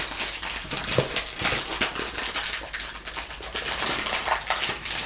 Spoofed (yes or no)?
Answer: no